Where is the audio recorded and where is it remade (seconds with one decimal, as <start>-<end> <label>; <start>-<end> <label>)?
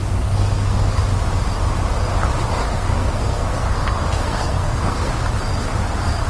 0.0-1.0 remade; 1.0-2.7 recorded; 2.7-5.1 remade; 5.1-6.3 recorded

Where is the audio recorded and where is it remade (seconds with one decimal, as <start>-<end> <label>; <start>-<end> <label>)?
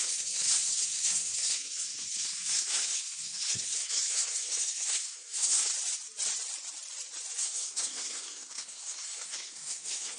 0.0-5.7 remade; 5.7-7.4 recorded; 7.4-10.2 remade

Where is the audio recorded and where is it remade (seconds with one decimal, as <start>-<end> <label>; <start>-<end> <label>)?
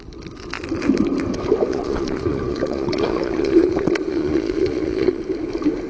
0.0-1.7 recorded; 1.7-5.2 remade; 5.2-5.9 recorded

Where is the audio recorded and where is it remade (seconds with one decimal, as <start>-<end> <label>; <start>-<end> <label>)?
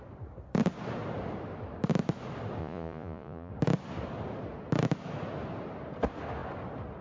0.0-2.6 recorded; 2.6-3.5 remade; 3.5-7.0 recorded